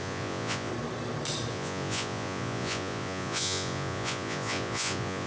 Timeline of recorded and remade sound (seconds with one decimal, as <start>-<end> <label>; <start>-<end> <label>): 0.0-0.7 remade; 0.7-1.5 recorded; 1.5-5.3 remade